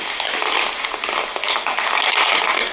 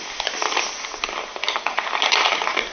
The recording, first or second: first